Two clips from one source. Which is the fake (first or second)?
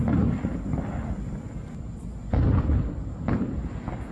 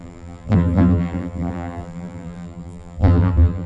second